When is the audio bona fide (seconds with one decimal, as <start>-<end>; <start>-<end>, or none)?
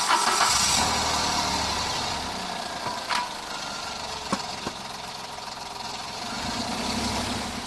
0.0-7.7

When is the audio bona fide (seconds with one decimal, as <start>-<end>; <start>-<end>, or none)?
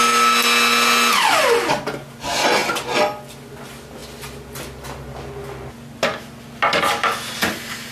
0.0-7.9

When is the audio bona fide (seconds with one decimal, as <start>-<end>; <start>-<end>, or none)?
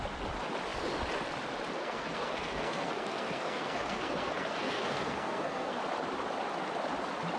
0.0-1.8; 5.8-7.4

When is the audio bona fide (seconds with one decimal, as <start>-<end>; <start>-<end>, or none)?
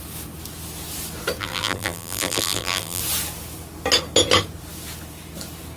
0.0-1.4; 3.0-5.8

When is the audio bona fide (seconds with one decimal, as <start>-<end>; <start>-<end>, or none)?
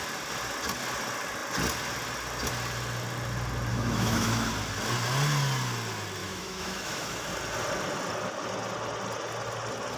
0.0-3.7; 4.5-6.2; 7.3-10.0